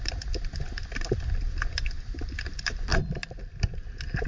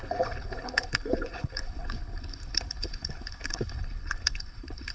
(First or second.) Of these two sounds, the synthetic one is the second